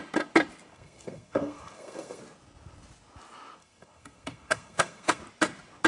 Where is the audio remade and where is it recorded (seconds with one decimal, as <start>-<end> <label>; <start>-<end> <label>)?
0.0-0.7 recorded; 0.7-2.2 remade; 2.2-3.6 recorded; 3.6-5.2 remade; 5.2-5.9 recorded